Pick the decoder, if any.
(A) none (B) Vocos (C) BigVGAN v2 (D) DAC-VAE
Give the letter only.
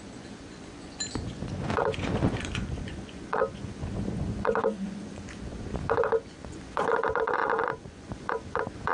B